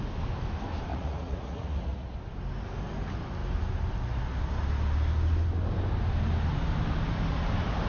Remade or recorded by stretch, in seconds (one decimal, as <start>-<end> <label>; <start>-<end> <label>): 0.0-0.9 recorded; 0.9-2.1 remade; 2.1-7.9 recorded